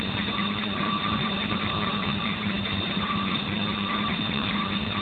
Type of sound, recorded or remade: remade